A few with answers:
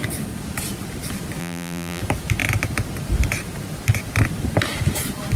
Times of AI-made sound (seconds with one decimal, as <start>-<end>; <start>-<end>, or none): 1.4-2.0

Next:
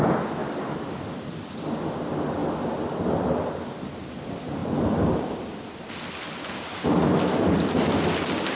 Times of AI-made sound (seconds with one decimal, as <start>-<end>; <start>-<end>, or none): 0.4-1.9; 4.6-8.1

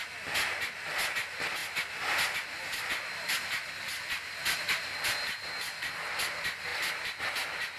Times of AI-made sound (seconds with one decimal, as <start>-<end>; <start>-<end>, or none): 1.6-5.5

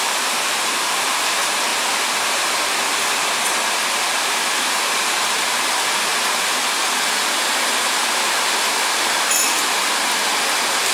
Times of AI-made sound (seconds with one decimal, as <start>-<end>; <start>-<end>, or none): 0.0-1.7; 4.1-8.7; 10.5-10.9

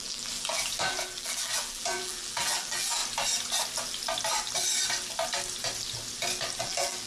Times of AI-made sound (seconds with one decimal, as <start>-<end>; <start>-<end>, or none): 0.0-3.0; 6.6-7.1